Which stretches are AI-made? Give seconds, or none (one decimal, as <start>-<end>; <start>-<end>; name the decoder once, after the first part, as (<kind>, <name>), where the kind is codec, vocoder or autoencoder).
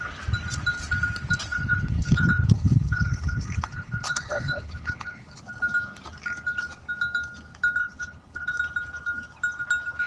1.5-5.4 (codec, HILCodec); 7.8-8.5